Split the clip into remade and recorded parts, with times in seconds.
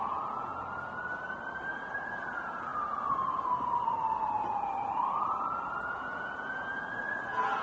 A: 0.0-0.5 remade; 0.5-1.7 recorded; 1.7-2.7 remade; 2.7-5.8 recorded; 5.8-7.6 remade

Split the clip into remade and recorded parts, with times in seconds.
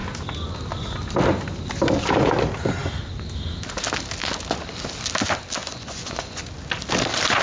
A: 0.0-5.6 recorded; 5.6-6.4 remade; 6.4-7.4 recorded